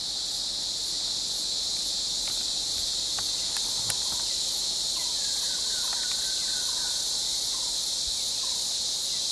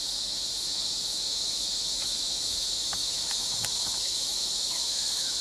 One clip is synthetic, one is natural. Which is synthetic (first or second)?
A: second